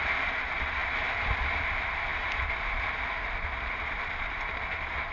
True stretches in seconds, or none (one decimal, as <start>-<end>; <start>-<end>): 0.0-5.1